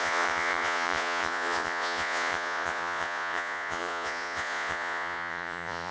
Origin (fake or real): fake